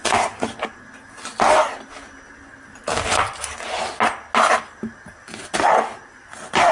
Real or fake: real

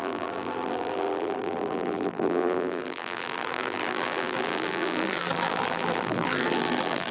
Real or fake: fake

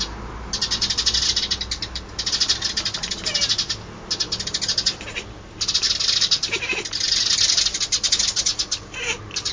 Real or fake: real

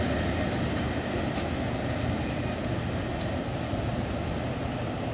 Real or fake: real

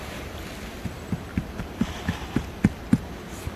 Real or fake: real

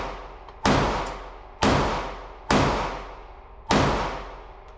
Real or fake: real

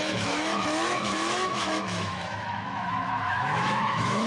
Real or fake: fake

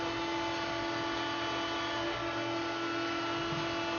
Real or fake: real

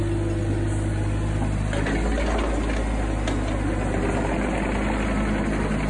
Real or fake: real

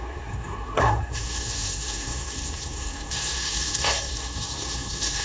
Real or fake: fake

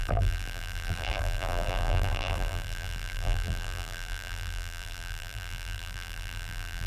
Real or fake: fake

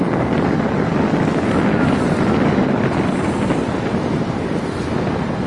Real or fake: real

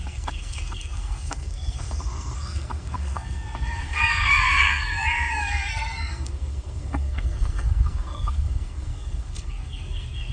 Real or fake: fake